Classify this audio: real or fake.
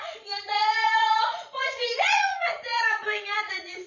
fake